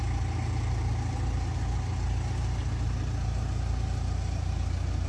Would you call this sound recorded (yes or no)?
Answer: yes